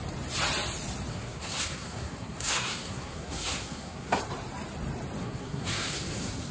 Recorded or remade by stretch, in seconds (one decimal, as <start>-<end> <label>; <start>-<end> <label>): 0.0-1.1 recorded; 1.1-4.2 remade; 4.2-5.2 recorded; 5.2-6.5 remade